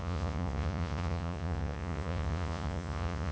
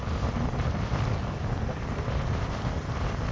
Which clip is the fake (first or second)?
first